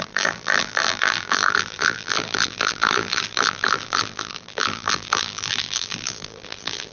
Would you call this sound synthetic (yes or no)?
yes